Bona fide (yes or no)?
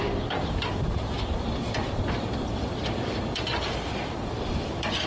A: no